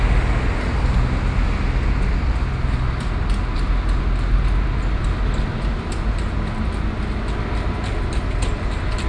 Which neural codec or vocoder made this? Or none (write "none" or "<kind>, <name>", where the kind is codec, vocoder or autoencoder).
none